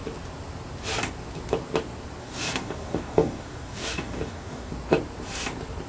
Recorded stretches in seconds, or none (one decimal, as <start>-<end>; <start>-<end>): 0.0-2.2; 4.7-5.9